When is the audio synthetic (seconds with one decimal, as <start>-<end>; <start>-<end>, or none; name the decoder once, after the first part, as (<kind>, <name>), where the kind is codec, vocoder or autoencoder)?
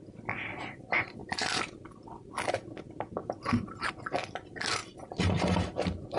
1.2-2.3 (vocoder, BigVGAN v2); 3.2-3.9; 4.8-6.2